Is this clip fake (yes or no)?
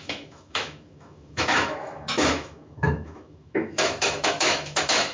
yes